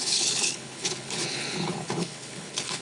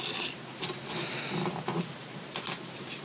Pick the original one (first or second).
second